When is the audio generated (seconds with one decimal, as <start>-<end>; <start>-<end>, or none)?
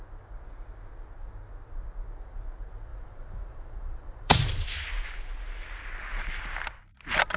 2.9-4.4